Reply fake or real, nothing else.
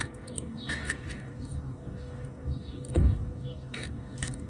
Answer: fake